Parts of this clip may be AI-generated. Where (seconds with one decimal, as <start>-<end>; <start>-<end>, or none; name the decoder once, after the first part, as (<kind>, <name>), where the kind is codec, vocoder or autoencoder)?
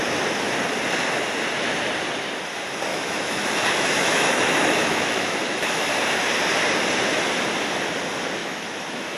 2.9-5.9 (autoencoder, DAC-VAE); 8.4-9.2